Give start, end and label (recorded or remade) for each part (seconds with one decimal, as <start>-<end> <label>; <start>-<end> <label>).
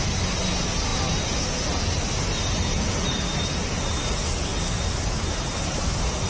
0.0-6.3 recorded